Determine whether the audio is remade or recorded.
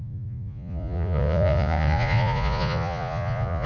remade